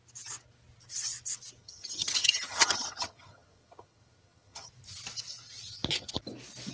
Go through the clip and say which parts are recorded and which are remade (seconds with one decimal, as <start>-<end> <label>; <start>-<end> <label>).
0.0-1.6 recorded; 1.6-4.7 remade; 4.7-6.7 recorded